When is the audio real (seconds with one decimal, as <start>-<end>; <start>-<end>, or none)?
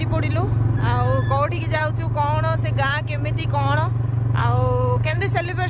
0.0-4.4; 5.2-5.7